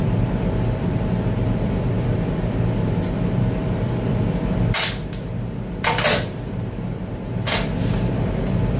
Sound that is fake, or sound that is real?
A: fake